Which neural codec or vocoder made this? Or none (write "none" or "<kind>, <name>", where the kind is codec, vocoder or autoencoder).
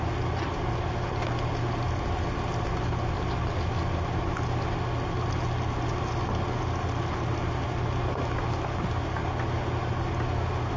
none